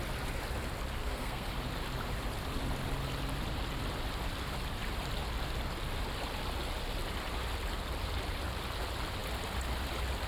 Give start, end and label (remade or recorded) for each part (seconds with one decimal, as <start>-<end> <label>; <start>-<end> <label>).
0.0-1.0 recorded; 1.0-1.5 remade; 1.5-10.3 recorded